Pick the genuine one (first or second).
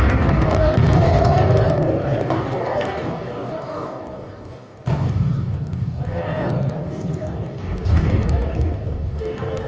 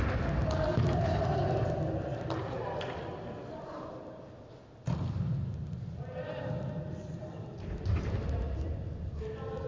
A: second